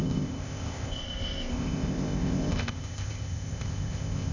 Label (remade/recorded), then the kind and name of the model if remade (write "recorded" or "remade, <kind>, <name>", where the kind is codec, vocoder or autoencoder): remade, codec, ZipCodec